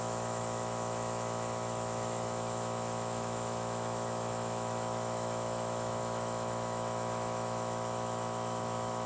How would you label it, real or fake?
fake